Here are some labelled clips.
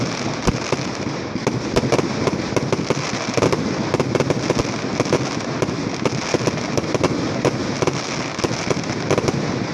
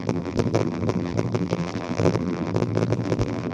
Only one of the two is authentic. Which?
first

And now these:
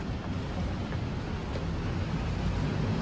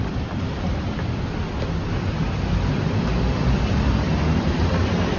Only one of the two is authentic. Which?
first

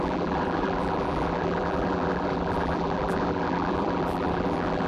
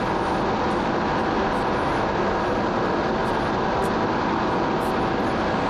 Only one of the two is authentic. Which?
second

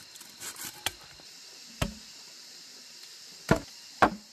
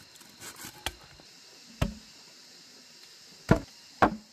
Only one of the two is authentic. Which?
second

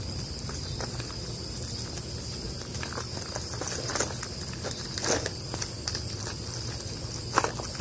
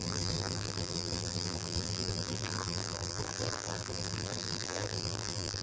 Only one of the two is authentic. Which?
first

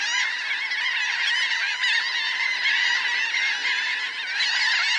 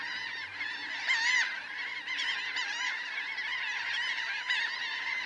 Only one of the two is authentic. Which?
first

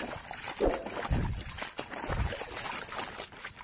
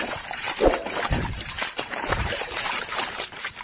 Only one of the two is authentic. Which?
first